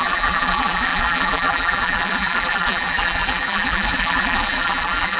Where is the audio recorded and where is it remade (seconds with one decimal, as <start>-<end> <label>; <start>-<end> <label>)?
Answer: 0.0-5.2 remade